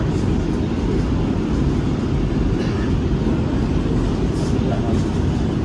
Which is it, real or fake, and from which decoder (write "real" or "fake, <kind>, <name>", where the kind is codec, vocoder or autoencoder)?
real